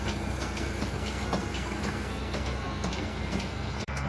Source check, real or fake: fake